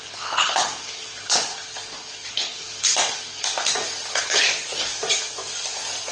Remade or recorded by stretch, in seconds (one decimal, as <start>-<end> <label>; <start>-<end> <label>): 0.0-1.5 remade; 1.5-2.3 recorded; 2.3-2.9 remade; 2.9-4.2 recorded; 4.2-4.9 remade; 4.9-6.1 recorded